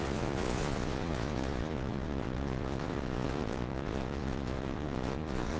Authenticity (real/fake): fake